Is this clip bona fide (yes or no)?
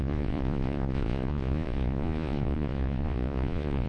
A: no